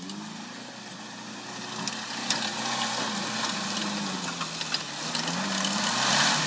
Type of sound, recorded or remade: recorded